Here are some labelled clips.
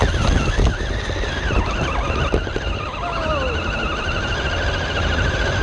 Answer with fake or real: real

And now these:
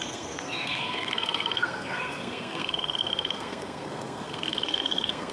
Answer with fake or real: fake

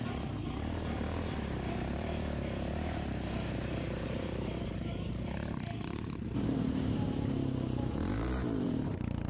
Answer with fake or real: fake